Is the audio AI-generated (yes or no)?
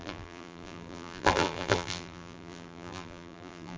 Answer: yes